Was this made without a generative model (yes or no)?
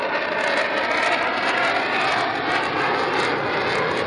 yes